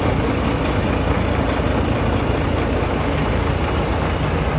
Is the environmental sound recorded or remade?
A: recorded